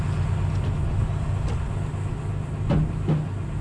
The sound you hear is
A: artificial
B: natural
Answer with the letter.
B